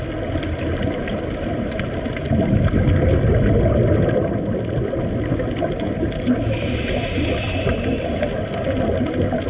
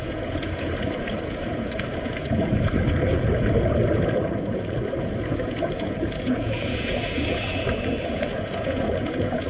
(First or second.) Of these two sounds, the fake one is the second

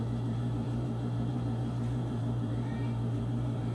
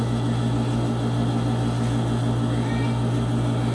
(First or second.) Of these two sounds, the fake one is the first